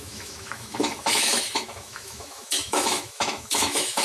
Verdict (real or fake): fake